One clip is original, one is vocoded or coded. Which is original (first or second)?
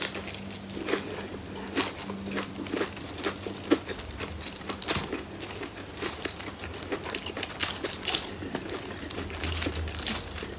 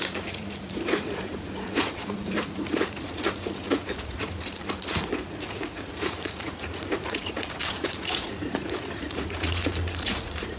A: first